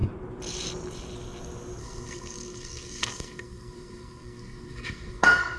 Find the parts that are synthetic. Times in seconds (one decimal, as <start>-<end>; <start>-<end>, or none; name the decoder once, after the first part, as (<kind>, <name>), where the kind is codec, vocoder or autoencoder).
1.8-5.6 (codec, SNAC)